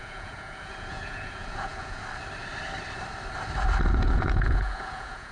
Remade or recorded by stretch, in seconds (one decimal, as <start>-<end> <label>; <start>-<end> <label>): 0.0-2.0 remade; 2.0-3.9 recorded; 3.9-5.3 remade